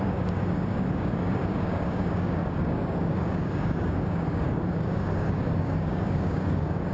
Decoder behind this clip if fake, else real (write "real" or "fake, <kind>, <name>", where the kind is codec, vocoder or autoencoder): fake, codec, DAC